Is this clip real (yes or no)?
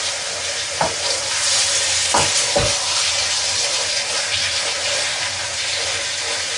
yes